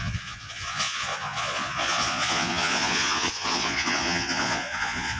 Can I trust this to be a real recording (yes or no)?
no